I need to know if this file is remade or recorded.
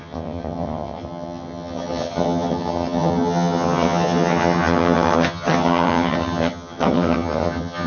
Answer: remade